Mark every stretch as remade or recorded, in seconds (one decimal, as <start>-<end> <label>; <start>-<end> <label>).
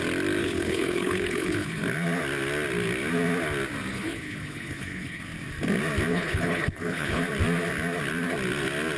0.0-0.4 recorded; 0.4-1.8 remade; 1.8-3.9 recorded; 3.9-5.2 remade; 5.2-6.1 recorded; 6.1-7.2 remade; 7.2-9.0 recorded